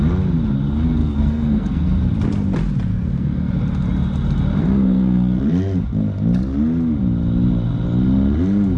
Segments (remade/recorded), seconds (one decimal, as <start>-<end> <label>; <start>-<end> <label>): 0.0-1.0 recorded; 1.0-2.1 remade; 2.1-2.9 recorded; 2.9-3.5 remade; 3.5-4.6 recorded; 4.6-5.4 remade; 5.4-8.8 recorded